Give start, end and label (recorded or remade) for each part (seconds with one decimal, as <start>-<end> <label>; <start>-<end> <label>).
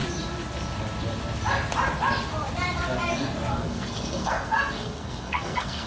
0.0-3.5 recorded; 3.5-5.9 remade